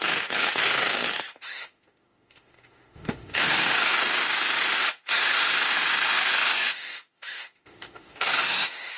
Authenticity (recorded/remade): remade